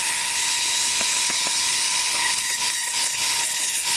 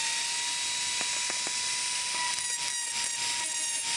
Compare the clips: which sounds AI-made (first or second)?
first